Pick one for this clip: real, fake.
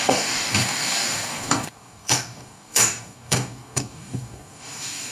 fake